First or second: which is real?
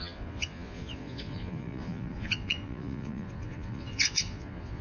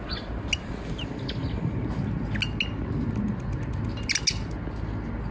second